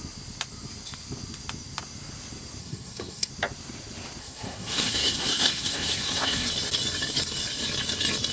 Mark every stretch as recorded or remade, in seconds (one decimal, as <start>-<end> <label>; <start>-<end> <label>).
0.0-2.6 recorded; 2.6-3.3 remade; 3.3-4.2 recorded; 4.2-6.5 remade; 6.5-8.3 recorded